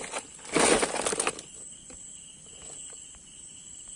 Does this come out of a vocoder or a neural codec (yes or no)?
no